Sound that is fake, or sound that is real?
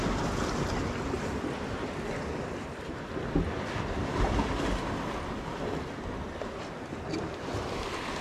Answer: real